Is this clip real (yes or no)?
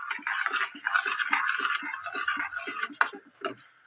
yes